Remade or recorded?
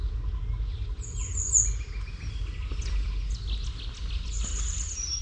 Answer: recorded